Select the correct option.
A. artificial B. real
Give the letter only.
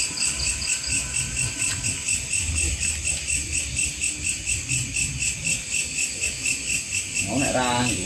B